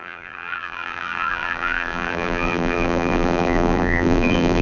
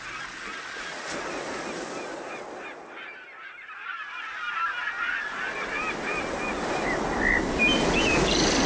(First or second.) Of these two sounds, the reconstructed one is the first